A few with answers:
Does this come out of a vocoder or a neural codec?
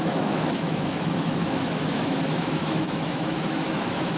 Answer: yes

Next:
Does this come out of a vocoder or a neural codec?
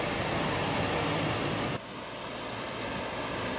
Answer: no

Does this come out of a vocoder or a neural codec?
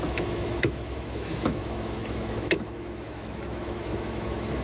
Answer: yes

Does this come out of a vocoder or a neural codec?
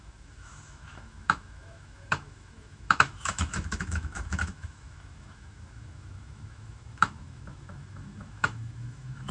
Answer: yes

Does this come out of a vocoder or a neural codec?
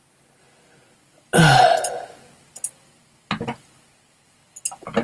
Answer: no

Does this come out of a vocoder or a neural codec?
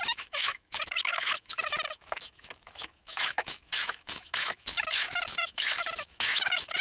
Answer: yes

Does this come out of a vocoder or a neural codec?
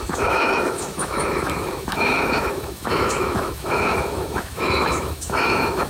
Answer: yes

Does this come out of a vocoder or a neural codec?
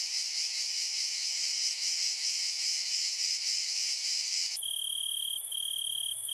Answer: yes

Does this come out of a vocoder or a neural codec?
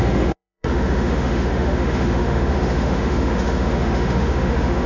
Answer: yes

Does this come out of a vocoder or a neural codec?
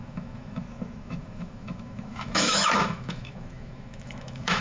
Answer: yes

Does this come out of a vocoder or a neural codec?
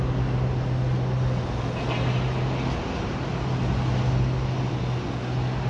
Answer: no